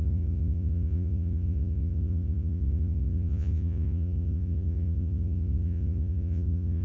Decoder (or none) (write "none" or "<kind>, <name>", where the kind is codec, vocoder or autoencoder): vocoder, Vocos